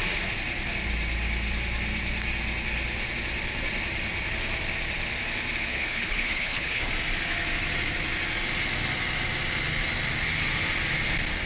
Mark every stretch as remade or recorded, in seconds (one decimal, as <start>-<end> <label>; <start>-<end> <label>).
0.0-5.7 recorded; 5.7-6.9 remade; 6.9-11.5 recorded